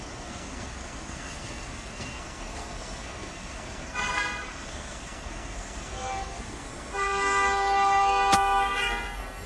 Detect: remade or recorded remade